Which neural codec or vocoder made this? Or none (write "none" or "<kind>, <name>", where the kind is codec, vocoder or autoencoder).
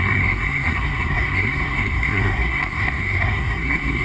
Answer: codec, SNAC